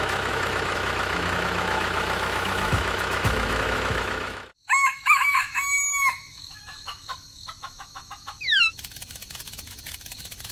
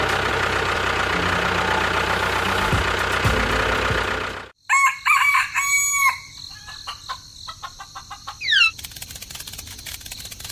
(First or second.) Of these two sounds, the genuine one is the second